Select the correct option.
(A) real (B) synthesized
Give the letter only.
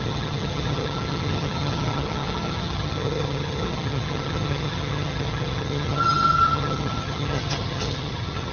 B